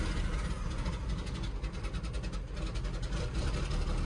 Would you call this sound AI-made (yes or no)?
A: no